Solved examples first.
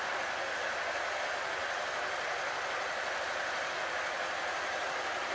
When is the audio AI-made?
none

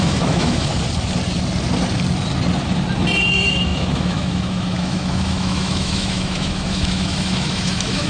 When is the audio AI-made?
0.0-0.7 (autoencoder, DAC-VAE); 3.3-8.1

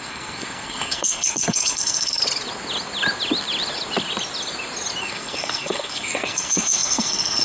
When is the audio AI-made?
0.0-2.2 (codec, SNAC); 5.0-7.4